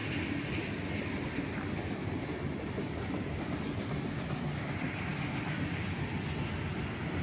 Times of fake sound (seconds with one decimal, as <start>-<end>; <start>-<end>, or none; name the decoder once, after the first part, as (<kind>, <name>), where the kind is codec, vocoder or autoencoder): none